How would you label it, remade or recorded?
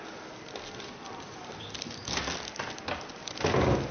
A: recorded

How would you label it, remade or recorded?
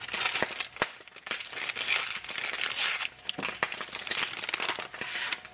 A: recorded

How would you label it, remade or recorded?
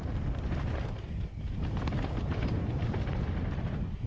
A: recorded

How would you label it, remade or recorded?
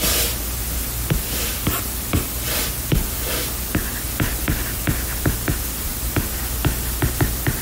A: recorded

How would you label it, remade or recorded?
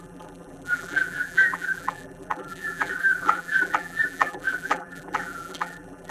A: remade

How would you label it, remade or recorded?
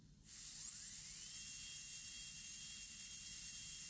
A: remade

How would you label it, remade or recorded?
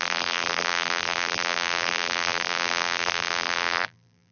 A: remade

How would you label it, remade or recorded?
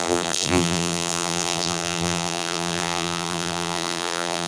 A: remade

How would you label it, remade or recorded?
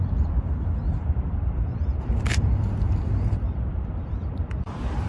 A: remade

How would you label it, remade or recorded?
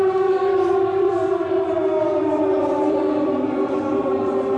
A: remade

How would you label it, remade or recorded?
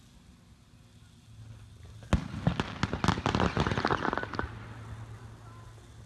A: recorded